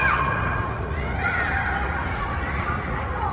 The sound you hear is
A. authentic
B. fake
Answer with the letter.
B